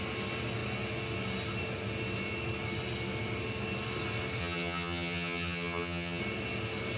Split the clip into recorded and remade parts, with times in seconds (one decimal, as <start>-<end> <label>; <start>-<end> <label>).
0.0-4.4 recorded; 4.4-6.2 remade; 6.2-7.0 recorded